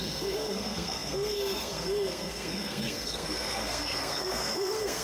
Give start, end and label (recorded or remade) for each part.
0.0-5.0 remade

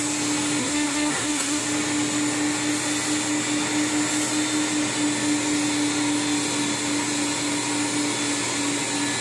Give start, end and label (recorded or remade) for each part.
0.0-0.6 recorded; 0.6-1.6 remade; 1.6-9.2 recorded